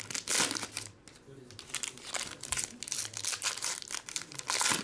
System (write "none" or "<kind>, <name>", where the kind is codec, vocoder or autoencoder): none